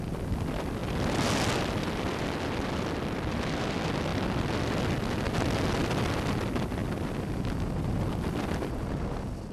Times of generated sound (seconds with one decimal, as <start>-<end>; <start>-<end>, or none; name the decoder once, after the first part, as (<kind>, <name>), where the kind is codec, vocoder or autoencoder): 6.8-7.9 (vocoder, BigVGAN v2)